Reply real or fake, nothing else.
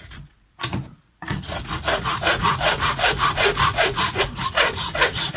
fake